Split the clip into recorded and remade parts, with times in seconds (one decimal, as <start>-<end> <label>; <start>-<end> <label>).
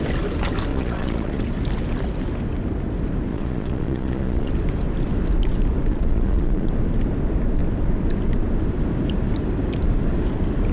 0.0-0.7 recorded; 0.7-1.4 remade; 1.4-3.3 recorded; 3.3-4.5 remade; 4.5-5.9 recorded; 5.9-6.7 remade; 6.7-10.7 recorded